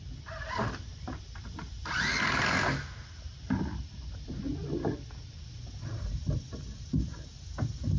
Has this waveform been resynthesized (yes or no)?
no